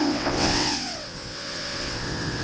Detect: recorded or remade remade